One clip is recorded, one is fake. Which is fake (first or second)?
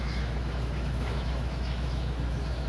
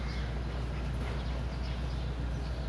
first